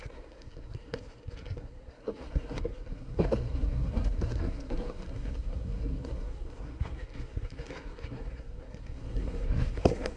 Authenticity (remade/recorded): remade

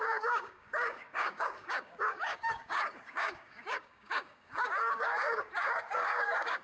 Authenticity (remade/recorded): remade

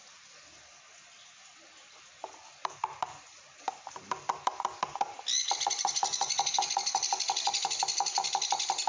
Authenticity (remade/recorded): recorded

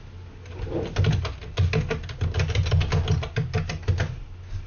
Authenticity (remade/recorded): recorded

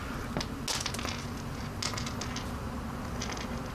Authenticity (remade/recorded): recorded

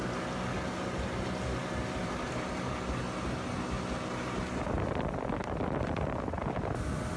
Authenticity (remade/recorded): recorded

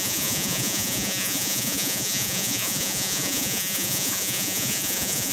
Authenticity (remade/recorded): remade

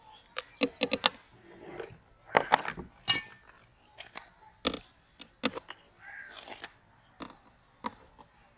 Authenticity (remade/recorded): recorded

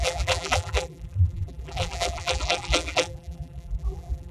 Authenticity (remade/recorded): remade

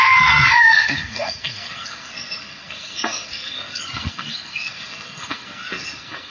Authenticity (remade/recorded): remade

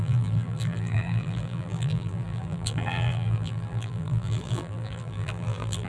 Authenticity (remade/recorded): remade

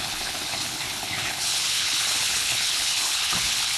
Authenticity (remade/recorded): remade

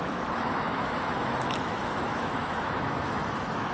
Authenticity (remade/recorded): remade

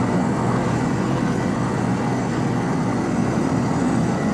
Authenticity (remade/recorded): remade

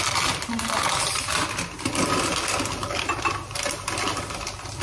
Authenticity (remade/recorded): recorded